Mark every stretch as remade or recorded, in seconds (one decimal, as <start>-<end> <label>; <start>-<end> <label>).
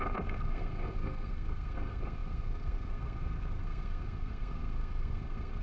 0.0-5.6 remade